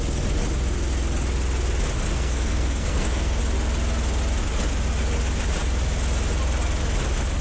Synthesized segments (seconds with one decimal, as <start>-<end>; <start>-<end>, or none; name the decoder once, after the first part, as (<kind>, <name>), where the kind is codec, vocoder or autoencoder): 2.1-3.4 (codec, SNAC)